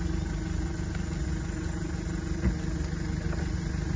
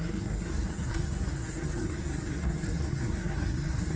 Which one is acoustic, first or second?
first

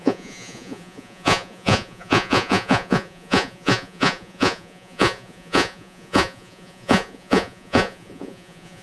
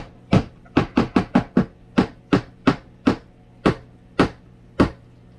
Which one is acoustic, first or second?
second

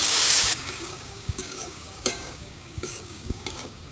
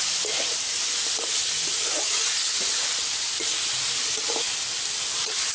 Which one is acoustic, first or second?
second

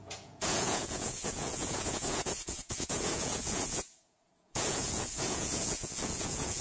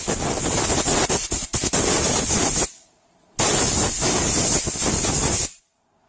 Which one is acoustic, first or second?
second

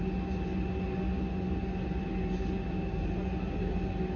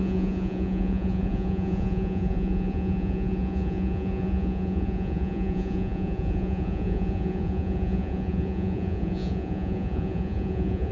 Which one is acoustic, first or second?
first